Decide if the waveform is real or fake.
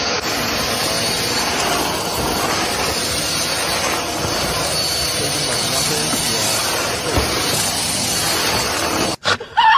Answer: real